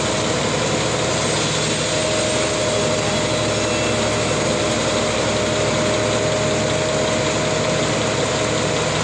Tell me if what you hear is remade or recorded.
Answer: recorded